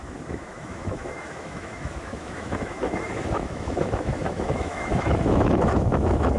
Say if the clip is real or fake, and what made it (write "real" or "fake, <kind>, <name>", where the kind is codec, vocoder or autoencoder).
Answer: fake, autoencoder, DAC-VAE